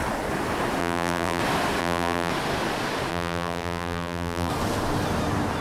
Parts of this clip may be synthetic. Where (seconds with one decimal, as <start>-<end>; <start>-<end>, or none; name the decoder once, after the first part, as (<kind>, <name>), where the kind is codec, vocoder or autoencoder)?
0.8-1.4 (vocoder, BigVGAN v2); 1.8-2.3; 3.1-4.5